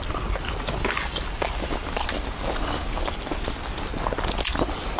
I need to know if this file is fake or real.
real